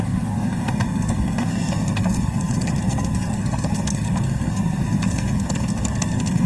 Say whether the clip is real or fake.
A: fake